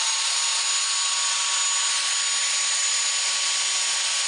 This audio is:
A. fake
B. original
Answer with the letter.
B